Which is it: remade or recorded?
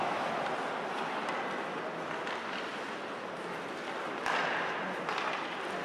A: recorded